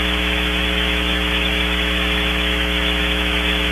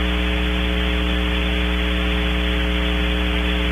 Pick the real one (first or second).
second